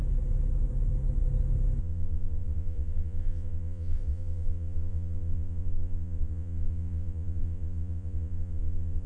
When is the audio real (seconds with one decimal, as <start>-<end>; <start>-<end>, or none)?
0.0-1.8